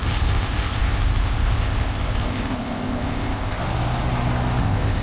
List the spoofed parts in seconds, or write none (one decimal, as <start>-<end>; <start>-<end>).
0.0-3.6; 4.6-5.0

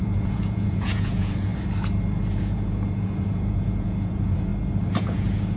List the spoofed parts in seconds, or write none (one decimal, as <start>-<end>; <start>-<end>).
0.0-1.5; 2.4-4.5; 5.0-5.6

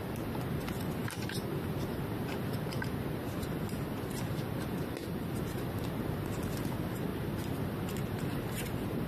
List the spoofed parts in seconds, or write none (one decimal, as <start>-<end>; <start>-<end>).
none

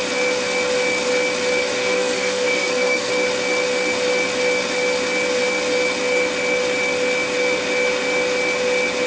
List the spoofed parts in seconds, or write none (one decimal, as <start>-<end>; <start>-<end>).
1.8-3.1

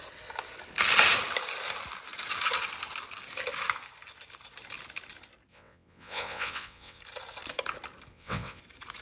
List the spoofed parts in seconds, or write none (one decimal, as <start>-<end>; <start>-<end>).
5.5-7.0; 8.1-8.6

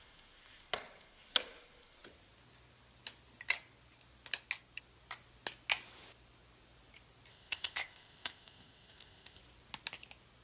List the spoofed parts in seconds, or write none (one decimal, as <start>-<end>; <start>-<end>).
7.3-9.4

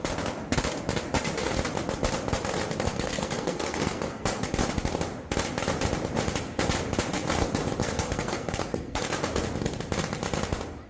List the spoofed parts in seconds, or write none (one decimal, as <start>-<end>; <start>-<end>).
2.9-4.5; 7.8-9.0

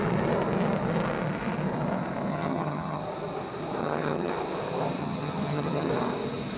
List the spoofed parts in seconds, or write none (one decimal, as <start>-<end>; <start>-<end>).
2.3-3.0; 3.8-4.3; 5.0-5.9